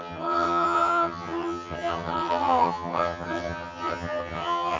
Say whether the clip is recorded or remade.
remade